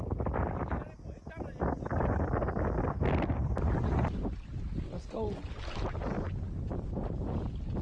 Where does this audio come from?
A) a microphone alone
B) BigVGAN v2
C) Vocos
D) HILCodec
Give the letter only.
A